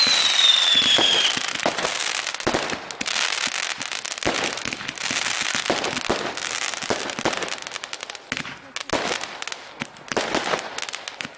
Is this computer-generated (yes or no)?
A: no